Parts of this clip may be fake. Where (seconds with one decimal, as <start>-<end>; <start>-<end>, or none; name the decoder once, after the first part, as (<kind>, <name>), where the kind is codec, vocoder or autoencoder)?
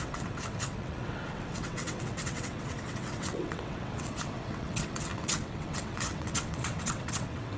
0.0-7.6 (vocoder, WaveNeXt)